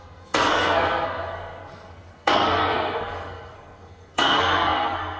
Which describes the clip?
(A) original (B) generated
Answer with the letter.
B